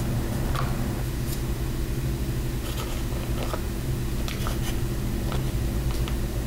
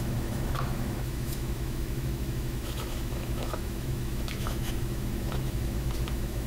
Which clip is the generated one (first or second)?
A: second